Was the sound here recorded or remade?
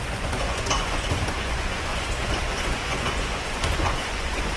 remade